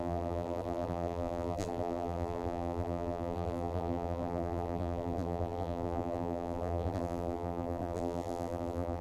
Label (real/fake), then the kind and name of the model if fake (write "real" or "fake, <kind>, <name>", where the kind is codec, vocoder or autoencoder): fake, vocoder, BigVGAN v2